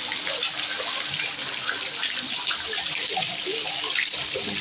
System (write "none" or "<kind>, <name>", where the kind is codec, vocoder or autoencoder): none